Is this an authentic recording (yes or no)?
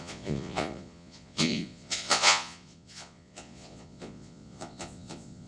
no